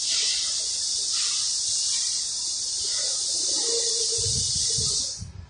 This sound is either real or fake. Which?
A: real